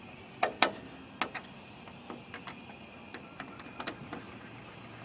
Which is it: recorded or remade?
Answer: recorded